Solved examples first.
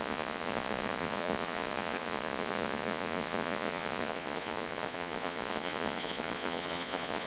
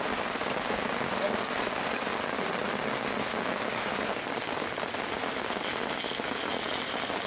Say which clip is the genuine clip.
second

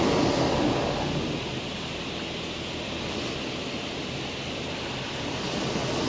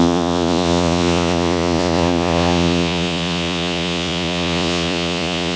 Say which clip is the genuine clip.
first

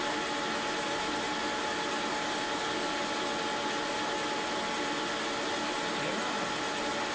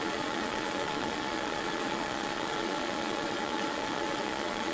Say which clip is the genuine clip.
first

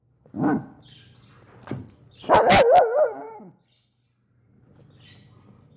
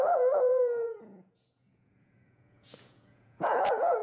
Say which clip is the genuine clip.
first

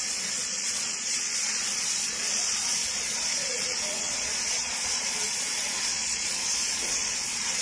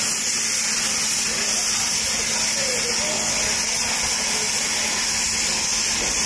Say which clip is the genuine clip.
second